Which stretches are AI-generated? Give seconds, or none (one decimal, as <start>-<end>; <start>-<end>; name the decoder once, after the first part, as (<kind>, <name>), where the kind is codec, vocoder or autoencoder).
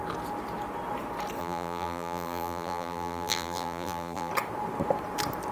1.4-4.3 (vocoder, BigVGAN v2)